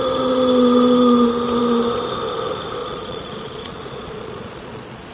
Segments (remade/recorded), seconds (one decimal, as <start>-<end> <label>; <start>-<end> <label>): 0.0-2.8 recorded; 2.8-5.1 remade